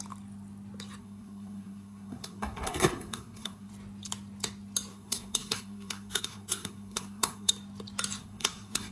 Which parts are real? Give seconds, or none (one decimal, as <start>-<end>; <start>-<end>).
0.0-1.0; 3.7-4.9; 7.5-8.2